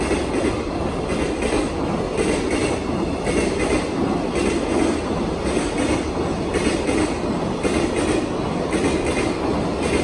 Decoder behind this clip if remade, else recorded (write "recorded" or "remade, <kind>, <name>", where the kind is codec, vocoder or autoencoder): recorded